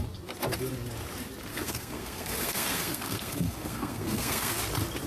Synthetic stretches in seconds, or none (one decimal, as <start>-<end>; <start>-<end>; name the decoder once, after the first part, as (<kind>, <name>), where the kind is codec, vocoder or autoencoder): 1.5-4.6 (codec, SNAC)